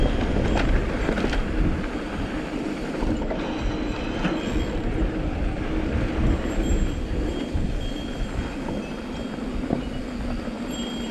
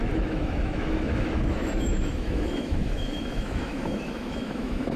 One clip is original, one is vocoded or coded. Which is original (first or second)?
first